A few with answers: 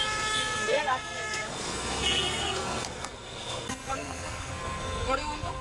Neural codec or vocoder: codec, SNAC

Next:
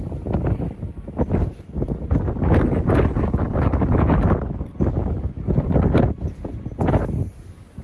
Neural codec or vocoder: none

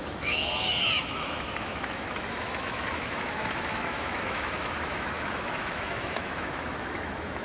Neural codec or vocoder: autoencoder, DAC-VAE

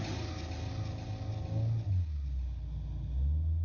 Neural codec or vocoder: none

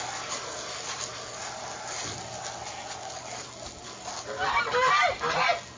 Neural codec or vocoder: none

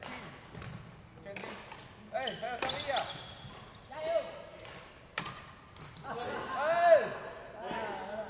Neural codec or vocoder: none